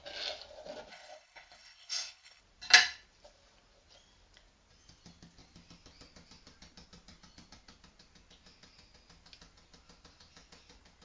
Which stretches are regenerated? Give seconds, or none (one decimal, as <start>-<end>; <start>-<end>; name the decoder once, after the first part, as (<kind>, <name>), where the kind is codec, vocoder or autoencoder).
0.9-2.4 (codec, HILCodec)